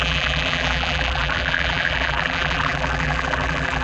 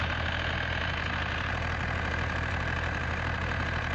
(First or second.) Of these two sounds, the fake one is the first